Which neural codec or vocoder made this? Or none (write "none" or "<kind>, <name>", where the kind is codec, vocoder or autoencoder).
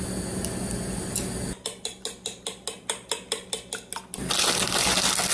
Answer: none